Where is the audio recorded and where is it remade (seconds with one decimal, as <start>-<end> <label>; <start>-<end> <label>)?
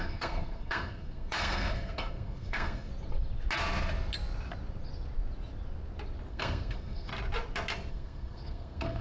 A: 0.0-2.9 remade; 2.9-6.3 recorded; 6.3-7.1 remade; 7.1-7.9 recorded; 7.9-9.0 remade